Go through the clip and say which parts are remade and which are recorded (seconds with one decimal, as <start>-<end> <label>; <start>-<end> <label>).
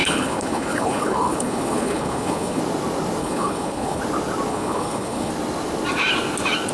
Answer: 0.0-2.6 remade; 2.6-3.2 recorded; 3.2-4.0 remade; 4.0-4.5 recorded; 4.5-5.3 remade; 5.3-6.7 recorded